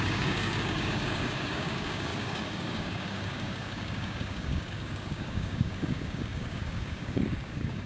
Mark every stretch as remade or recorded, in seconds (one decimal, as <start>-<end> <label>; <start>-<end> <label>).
0.0-7.9 remade

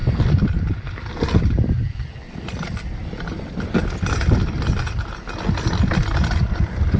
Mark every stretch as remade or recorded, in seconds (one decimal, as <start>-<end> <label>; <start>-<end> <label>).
0.0-2.4 remade; 2.4-3.0 recorded; 3.0-5.1 remade; 5.1-7.0 recorded

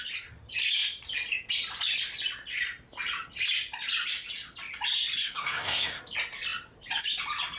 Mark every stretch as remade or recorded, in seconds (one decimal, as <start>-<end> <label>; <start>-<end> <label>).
0.0-5.2 recorded; 5.2-6.0 remade; 6.0-7.6 recorded